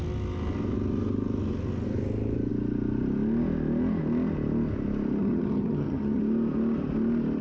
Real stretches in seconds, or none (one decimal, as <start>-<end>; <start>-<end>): 0.0-5.2; 6.2-7.4